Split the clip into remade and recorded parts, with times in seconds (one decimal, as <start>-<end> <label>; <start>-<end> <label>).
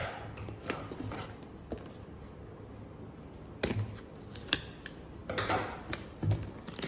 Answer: 0.0-6.9 recorded